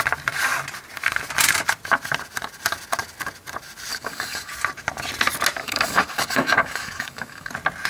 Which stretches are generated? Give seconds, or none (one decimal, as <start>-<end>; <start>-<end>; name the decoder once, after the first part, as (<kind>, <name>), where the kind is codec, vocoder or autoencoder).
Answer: 3.9-4.5 (codec, DAC); 5.6-7.5